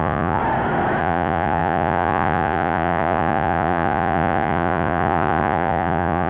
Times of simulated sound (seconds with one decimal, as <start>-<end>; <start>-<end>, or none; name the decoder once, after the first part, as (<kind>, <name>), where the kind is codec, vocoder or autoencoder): 0.0-0.4 (vocoder, Vocos); 1.0-6.3